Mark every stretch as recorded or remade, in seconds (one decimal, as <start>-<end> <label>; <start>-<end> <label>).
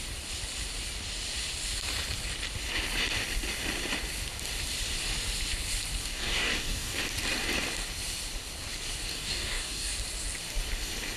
0.0-6.0 recorded; 6.0-7.0 remade; 7.0-9.1 recorded; 9.1-9.9 remade; 9.9-11.2 recorded